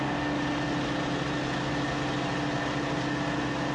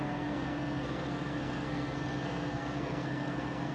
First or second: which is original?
first